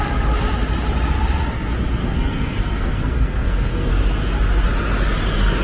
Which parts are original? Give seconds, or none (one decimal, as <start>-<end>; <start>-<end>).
0.0-2.0; 3.9-5.6

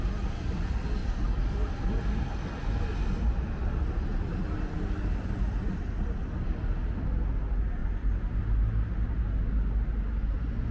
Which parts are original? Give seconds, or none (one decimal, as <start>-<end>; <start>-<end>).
0.0-1.0; 1.9-7.8; 8.4-10.7

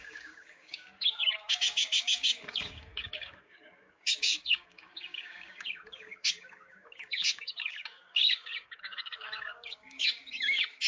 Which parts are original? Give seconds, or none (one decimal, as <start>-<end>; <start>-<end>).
none